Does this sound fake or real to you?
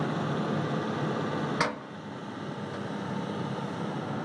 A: real